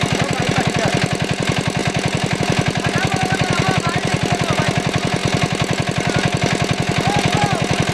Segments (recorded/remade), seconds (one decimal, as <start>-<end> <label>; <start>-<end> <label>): 0.0-7.9 recorded